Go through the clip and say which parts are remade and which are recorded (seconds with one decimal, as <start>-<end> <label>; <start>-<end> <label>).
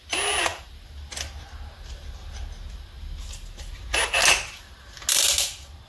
0.0-5.9 recorded